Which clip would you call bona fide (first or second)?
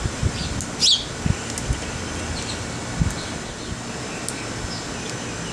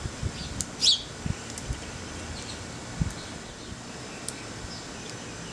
first